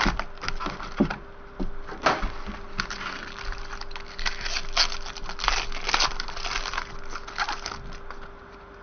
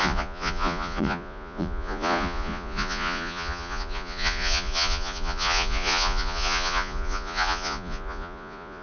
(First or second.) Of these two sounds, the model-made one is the second